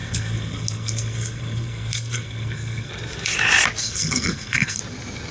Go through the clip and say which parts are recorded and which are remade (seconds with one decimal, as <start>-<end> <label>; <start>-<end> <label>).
0.0-2.9 remade; 2.9-3.8 recorded; 3.8-4.8 remade; 4.8-5.3 recorded